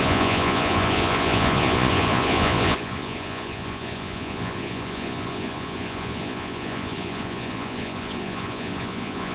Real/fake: fake